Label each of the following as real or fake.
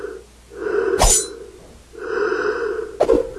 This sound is real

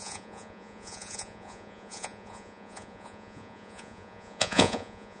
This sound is fake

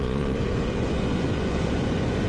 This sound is fake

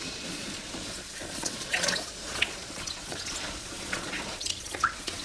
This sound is fake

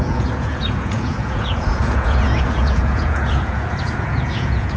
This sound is fake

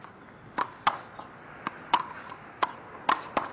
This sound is real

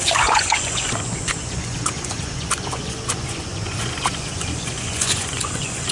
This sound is fake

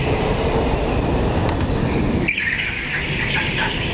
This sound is real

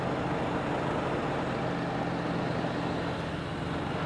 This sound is real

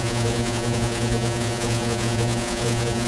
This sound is fake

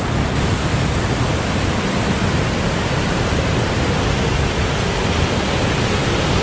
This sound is real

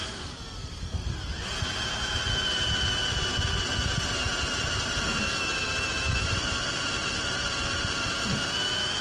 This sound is real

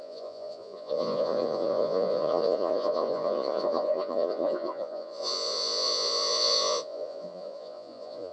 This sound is fake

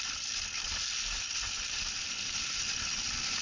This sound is real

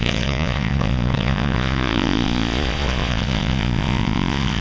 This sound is fake